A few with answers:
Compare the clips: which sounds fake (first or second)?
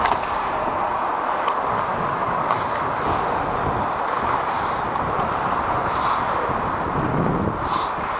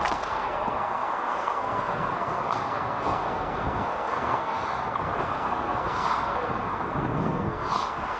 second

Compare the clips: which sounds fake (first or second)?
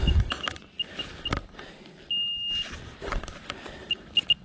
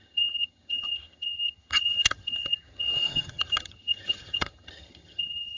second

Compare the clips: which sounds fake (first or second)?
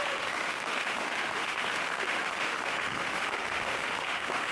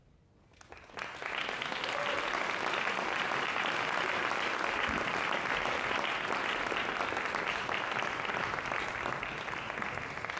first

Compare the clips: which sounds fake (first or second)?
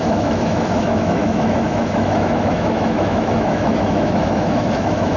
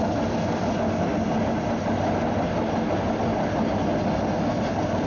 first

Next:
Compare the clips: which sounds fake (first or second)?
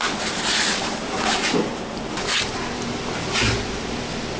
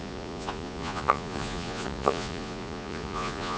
second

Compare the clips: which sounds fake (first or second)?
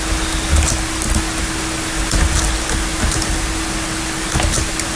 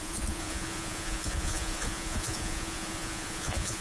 second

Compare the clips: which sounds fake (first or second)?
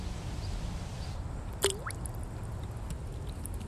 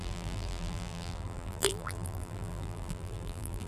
second